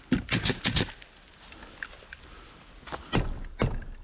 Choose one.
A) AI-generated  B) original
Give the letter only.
B